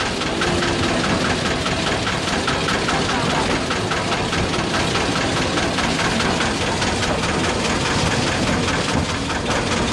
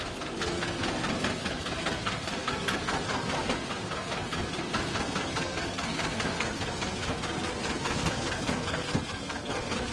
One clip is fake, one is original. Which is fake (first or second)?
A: second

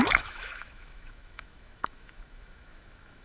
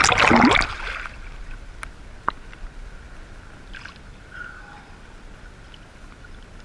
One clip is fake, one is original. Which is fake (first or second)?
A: first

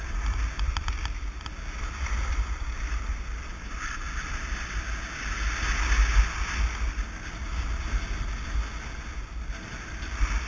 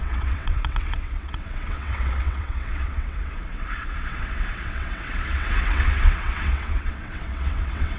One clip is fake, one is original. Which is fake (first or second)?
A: second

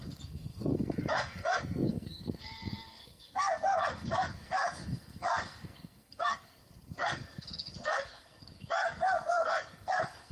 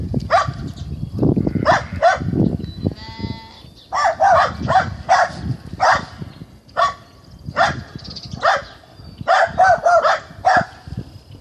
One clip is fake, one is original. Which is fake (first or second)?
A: first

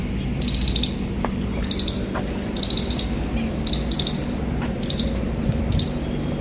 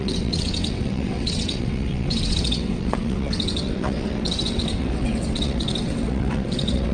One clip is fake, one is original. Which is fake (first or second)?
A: second